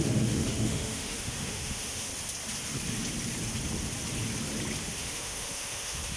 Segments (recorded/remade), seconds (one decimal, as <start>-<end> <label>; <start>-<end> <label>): 0.0-2.1 remade; 2.1-4.8 recorded; 4.8-6.2 remade